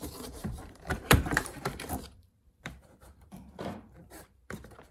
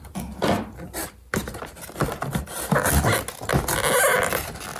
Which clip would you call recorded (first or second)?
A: second